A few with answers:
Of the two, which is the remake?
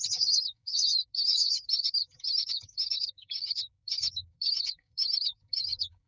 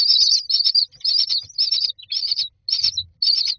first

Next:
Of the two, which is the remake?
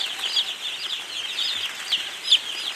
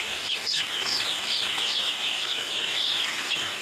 second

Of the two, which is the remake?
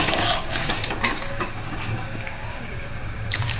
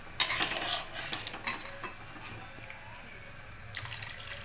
first